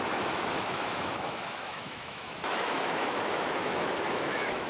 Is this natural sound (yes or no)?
no